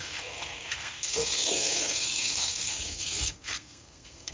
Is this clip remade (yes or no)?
yes